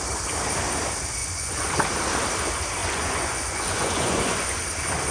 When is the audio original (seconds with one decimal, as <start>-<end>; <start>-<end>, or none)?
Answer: 0.0-1.2; 1.8-2.8; 4.6-5.1